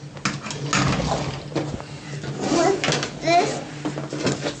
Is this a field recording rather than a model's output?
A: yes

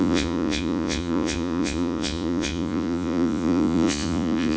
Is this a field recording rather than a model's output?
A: no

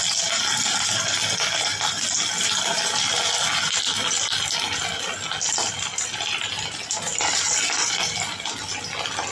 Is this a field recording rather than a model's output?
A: yes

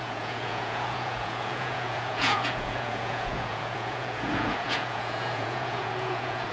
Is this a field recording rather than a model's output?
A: no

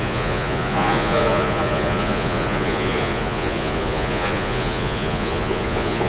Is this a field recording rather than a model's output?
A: no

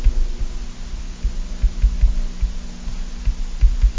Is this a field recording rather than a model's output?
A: yes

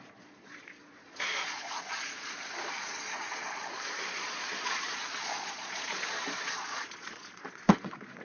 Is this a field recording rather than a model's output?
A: no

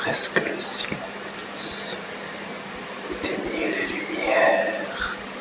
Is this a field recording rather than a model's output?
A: yes